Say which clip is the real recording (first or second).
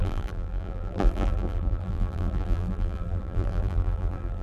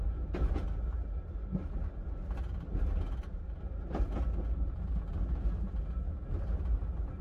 second